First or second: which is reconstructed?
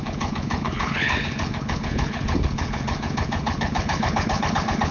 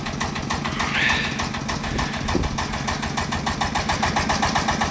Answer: first